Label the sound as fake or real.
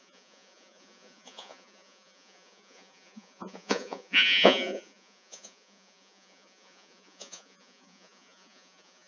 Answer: fake